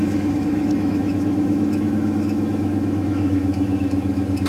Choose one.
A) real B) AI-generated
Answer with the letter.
B